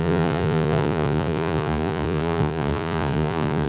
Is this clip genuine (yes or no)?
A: no